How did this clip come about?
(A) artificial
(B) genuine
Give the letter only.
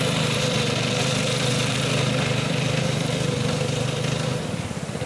A